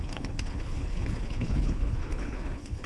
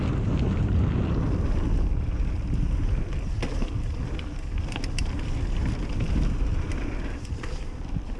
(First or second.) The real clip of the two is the second